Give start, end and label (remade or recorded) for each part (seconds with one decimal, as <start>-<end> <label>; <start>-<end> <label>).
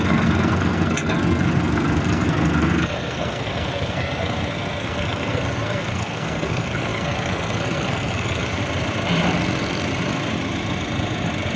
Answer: 0.0-8.6 remade; 8.6-11.6 recorded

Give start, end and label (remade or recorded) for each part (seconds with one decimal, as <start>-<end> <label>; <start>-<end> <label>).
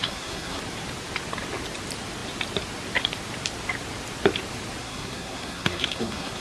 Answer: 0.0-0.6 remade; 0.6-4.8 recorded; 4.8-6.4 remade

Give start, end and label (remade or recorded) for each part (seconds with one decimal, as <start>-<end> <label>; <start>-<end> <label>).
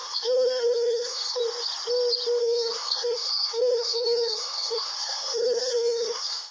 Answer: 0.0-1.4 remade; 1.4-2.4 recorded; 2.4-6.5 remade